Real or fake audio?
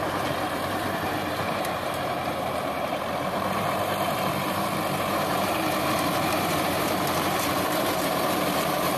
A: fake